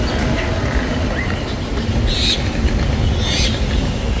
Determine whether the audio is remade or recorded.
recorded